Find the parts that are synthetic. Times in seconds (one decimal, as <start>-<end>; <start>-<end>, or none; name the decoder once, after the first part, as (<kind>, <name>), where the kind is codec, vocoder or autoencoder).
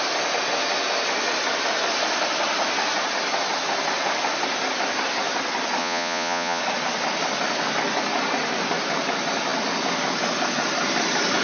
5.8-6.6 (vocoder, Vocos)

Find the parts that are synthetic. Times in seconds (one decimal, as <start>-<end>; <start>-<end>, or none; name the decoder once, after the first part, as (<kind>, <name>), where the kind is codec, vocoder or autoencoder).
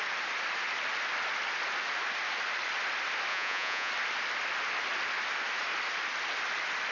3.3-3.9 (vocoder, Vocos)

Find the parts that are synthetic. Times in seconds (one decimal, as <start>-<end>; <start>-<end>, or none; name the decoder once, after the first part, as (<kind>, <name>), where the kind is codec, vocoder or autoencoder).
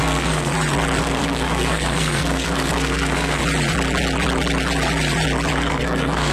0.0-0.5 (codec, SNAC); 1.0-3.4; 5.6-6.3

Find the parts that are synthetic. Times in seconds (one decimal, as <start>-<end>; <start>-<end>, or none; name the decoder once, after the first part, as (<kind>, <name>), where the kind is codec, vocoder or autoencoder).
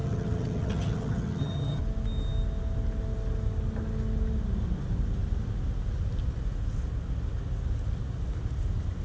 0.0-1.8 (vocoder, HiFi-GAN)